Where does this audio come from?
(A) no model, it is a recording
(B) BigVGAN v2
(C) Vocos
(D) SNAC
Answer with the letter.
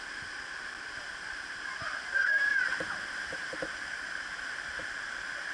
A